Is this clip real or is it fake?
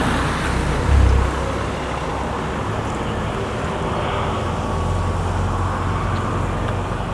real